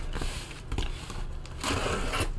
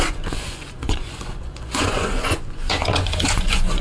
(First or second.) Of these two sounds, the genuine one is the first